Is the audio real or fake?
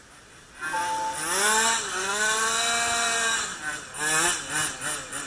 real